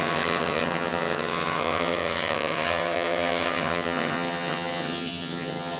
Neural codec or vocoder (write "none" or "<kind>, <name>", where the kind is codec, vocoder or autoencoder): vocoder, HiFi-GAN